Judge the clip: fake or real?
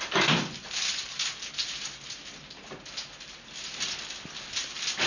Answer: real